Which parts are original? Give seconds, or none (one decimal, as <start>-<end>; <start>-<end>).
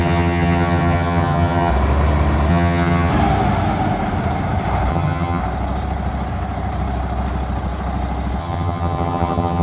1.7-2.5; 3.1-4.9; 5.4-8.4